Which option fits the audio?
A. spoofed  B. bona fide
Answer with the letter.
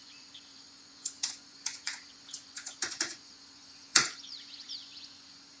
A